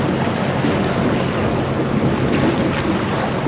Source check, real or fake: real